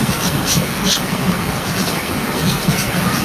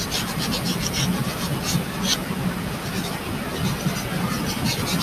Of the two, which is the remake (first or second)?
first